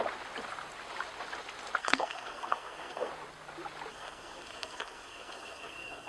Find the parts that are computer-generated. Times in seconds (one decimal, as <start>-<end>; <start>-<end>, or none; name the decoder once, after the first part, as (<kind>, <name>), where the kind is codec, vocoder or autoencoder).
1.8-3.1 (codec, SNAC); 3.9-6.1